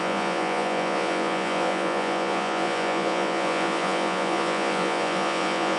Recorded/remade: remade